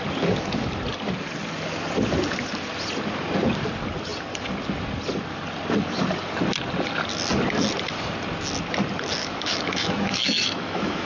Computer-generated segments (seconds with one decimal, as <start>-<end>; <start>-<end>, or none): 9.2-11.1